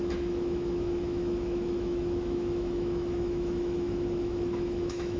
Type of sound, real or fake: fake